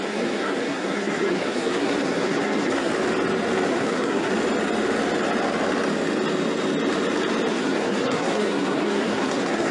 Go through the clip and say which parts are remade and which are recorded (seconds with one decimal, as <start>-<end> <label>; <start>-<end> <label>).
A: 0.0-2.9 remade; 2.9-3.7 recorded; 3.7-4.3 remade; 4.3-7.5 recorded; 7.5-9.7 remade